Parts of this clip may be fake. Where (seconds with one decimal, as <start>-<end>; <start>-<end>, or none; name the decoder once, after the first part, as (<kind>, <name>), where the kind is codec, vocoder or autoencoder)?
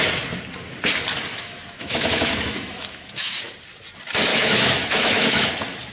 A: 1.3-3.4 (autoencoder, DAC-VAE); 4.3-5.5